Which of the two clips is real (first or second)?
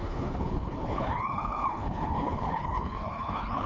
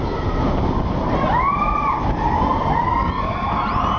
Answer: second